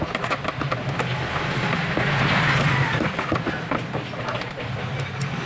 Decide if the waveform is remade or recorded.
recorded